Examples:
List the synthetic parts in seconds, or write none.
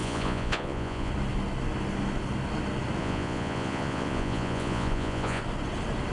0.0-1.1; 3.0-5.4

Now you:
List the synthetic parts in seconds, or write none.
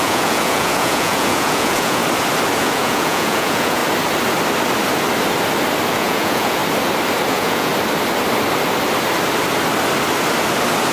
0.0-2.0; 2.6-3.8; 5.9-6.6; 7.3-7.7